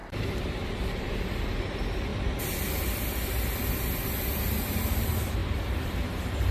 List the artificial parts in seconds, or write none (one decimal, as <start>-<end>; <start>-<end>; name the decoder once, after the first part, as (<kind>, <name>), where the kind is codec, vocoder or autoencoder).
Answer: 0.0-2.1 (vocoder, BigVGAN v2); 4.5-6.5